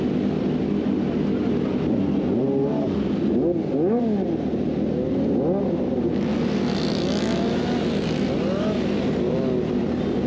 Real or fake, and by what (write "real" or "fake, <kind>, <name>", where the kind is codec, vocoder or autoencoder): real